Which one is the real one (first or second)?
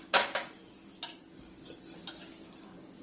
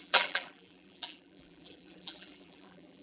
first